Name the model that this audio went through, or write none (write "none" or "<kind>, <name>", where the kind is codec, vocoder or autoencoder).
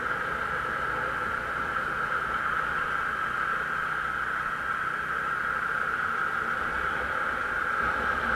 none